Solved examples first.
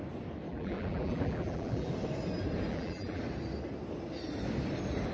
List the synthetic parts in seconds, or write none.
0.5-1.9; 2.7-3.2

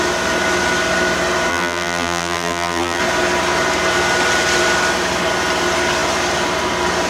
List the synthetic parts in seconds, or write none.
1.5-3.0

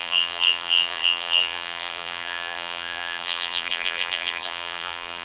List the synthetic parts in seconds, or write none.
0.0-5.2

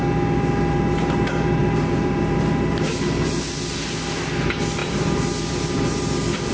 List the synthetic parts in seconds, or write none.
1.6-3.5; 4.8-6.5

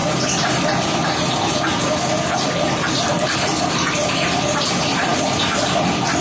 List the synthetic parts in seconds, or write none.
3.7-6.2

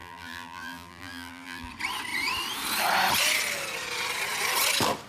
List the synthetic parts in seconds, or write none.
0.0-1.7

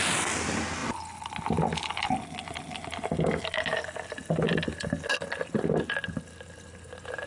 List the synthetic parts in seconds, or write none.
none